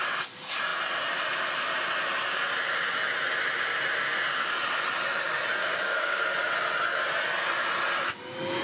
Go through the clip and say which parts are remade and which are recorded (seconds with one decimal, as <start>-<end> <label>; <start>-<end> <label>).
0.0-5.6 recorded; 5.6-6.2 remade; 6.2-8.6 recorded